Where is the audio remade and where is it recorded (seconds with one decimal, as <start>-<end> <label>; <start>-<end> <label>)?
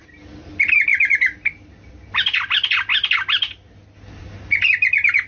0.0-5.3 recorded